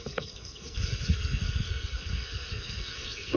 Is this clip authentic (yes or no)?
no